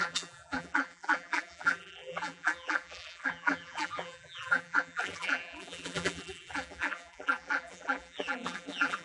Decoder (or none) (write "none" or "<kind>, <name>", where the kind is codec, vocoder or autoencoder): vocoder, BigVGAN v2